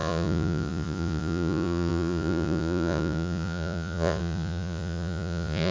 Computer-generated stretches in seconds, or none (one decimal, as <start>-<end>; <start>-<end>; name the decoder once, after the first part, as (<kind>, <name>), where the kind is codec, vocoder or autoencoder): 0.0-5.7 (vocoder, Vocos)